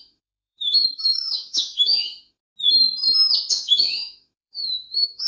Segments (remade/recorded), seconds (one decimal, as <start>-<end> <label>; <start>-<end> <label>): 0.0-2.4 remade; 2.4-3.5 recorded; 3.5-5.3 remade